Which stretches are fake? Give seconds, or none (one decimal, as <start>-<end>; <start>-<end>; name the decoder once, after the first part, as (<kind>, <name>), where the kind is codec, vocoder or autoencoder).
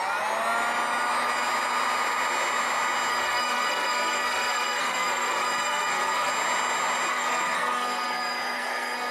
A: 3.1-6.3 (codec, SNAC); 7.1-9.1